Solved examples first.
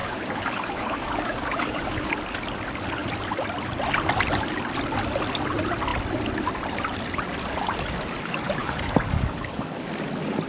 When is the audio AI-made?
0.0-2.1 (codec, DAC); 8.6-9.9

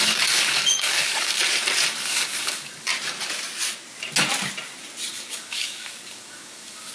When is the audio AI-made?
0.0-1.4 (codec, DAC); 2.0-2.9; 5.1-6.9